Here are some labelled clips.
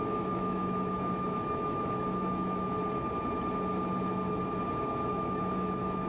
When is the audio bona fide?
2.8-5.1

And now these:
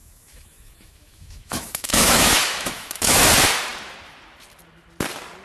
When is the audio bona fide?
3.2-5.4

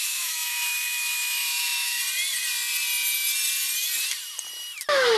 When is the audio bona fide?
2.0-5.2

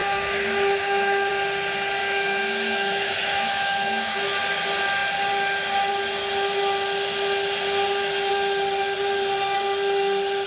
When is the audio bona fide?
1.3-2.0; 4.4-10.5

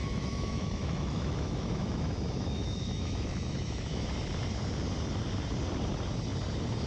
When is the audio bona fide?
4.1-6.9